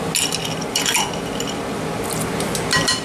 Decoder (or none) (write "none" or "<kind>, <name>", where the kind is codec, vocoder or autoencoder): none